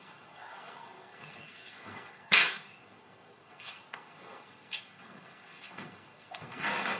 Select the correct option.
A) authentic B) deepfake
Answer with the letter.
B